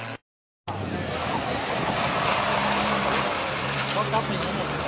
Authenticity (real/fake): real